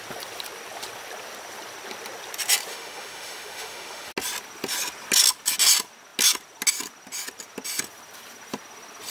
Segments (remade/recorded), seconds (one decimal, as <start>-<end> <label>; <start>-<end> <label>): 0.0-2.7 recorded; 2.7-4.1 remade; 4.1-9.1 recorded